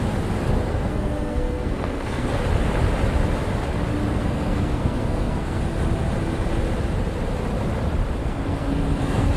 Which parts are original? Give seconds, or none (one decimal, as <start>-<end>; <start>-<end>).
0.0-0.7; 2.4-4.1; 5.6-8.2